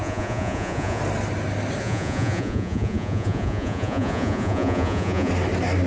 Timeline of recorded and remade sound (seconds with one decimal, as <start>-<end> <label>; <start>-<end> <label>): 0.0-1.0 remade; 1.0-1.8 recorded; 1.8-5.3 remade; 5.3-5.9 recorded